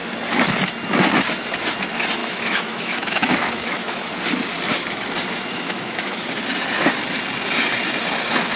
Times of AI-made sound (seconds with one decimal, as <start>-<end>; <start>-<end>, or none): 2.2-4.1; 5.5-6.4